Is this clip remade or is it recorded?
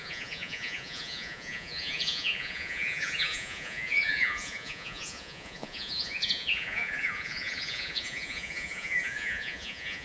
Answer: remade